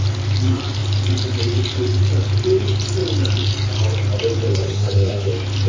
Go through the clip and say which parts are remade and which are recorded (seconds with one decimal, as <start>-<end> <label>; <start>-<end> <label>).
0.0-4.5 recorded; 4.5-5.3 remade; 5.3-5.7 recorded